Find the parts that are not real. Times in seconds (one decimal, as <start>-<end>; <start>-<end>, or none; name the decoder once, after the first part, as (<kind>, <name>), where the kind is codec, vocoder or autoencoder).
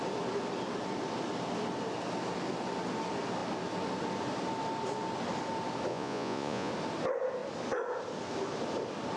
5.9-6.7 (vocoder, Vocos)